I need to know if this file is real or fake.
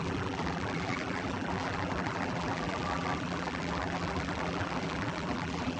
fake